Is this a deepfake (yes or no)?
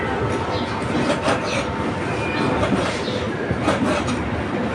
no